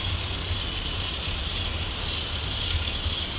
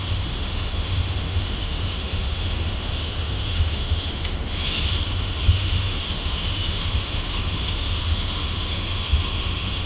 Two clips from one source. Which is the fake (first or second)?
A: second